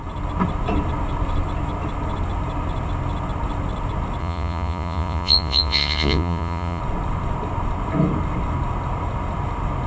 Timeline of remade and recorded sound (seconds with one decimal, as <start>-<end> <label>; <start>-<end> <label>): 0.0-4.2 recorded; 4.2-6.8 remade; 6.8-9.9 recorded